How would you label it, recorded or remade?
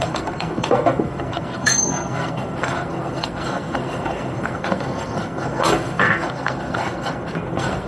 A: remade